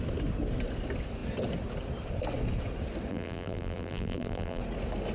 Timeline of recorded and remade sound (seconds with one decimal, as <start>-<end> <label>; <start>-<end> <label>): 0.0-3.1 recorded; 3.1-4.6 remade; 4.6-5.1 recorded